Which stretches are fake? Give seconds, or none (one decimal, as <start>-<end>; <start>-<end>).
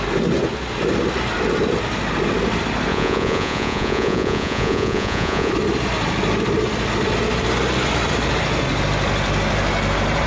2.9-5.5